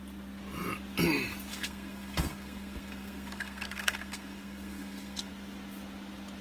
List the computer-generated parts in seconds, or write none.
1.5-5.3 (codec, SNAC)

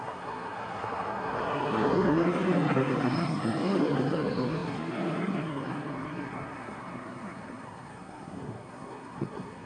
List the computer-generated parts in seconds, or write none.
0.0-9.7 (codec, SNAC)